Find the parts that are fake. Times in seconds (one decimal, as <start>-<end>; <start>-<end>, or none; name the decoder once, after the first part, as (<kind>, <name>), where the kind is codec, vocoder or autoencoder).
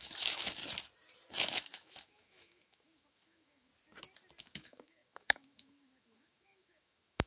0.0-0.6 (autoencoder, DAC-VAE); 1.3-3.7; 4.4-7.3